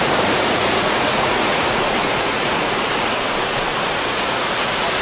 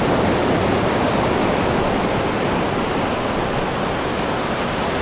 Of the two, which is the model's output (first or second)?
first